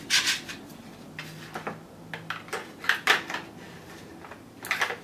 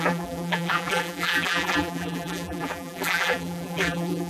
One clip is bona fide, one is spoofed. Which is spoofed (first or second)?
second